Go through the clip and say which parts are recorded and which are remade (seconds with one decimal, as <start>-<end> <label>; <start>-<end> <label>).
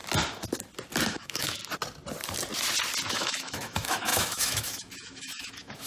0.0-1.1 recorded; 1.1-1.6 remade; 1.6-3.1 recorded; 3.1-5.9 remade